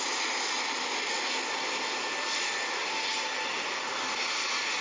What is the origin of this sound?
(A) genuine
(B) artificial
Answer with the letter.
A